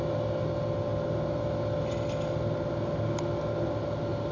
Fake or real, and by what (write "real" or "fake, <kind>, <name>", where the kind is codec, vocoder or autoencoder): real